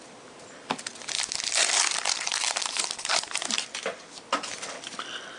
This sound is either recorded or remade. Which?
remade